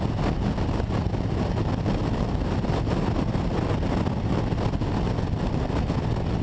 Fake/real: real